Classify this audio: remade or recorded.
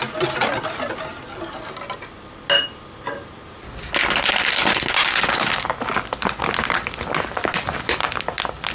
recorded